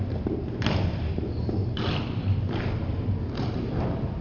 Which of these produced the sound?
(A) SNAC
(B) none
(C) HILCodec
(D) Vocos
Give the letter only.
B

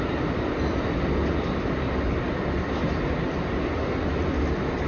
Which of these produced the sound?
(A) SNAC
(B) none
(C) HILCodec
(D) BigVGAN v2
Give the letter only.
B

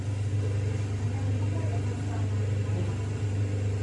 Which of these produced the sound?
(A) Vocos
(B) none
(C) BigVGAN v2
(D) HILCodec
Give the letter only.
B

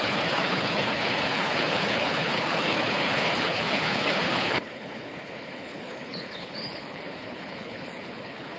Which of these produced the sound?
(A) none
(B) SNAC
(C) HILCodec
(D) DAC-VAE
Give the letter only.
C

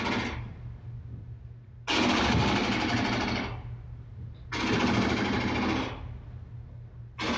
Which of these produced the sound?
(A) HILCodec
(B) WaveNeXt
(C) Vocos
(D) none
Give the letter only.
D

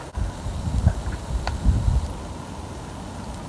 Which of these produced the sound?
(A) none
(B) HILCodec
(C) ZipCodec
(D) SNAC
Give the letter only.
A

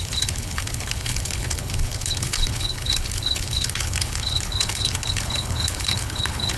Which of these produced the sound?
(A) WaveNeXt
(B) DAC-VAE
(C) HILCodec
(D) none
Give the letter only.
C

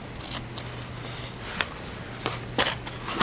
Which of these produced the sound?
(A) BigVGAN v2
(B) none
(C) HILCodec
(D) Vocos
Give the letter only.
B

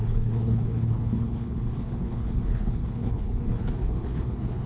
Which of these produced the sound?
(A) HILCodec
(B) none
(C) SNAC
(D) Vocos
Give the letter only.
A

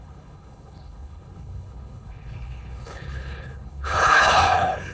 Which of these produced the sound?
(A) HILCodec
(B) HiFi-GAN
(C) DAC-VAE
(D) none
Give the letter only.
A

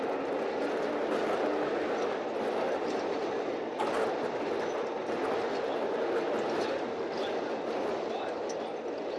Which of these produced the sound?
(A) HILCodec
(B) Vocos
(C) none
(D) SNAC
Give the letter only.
C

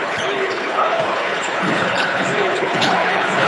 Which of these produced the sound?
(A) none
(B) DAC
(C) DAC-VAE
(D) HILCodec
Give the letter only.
D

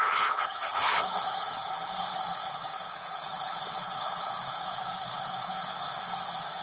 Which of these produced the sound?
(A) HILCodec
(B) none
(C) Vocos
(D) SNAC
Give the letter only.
A